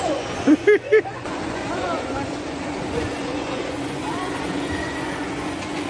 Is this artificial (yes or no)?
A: yes